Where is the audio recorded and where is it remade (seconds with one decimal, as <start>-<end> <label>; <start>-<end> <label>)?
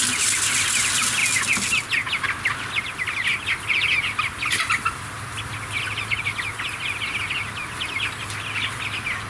0.0-9.3 recorded